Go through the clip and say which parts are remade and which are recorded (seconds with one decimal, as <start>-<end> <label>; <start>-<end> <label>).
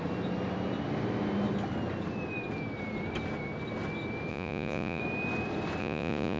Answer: 0.0-4.3 recorded; 4.3-5.0 remade; 5.0-5.8 recorded; 5.8-6.4 remade